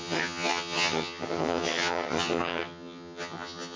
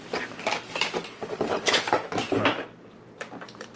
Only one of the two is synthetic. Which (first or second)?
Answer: first